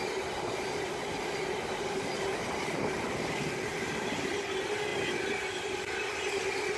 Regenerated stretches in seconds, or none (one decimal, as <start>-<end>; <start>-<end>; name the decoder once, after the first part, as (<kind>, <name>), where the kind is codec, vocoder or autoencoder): none

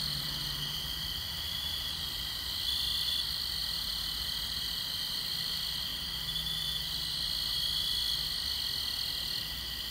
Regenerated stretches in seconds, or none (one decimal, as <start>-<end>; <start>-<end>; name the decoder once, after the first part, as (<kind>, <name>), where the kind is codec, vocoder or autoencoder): 0.0-3.6 (vocoder, BigVGAN v2); 4.2-5.9

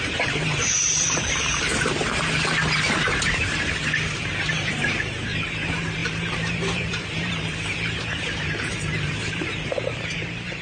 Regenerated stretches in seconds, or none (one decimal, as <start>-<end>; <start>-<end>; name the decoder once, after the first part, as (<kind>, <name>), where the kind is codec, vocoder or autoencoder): 0.0-1.7 (vocoder, BigVGAN v2); 4.5-10.6

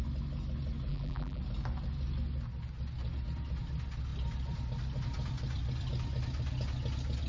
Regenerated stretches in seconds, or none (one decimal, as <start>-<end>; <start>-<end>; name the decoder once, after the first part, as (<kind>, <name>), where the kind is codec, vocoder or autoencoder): 0.9-1.4 (vocoder, BigVGAN v2)

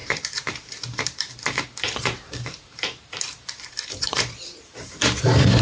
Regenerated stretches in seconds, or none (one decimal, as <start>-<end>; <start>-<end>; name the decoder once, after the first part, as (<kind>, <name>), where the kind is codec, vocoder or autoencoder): 0.0-5.6 (vocoder, BigVGAN v2)